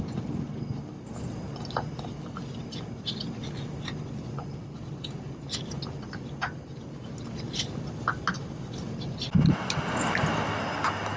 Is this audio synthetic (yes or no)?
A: no